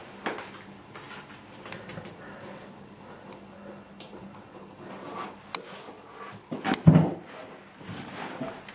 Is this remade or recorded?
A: recorded